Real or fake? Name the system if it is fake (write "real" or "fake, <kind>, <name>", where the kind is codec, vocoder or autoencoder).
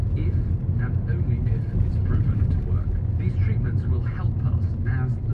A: real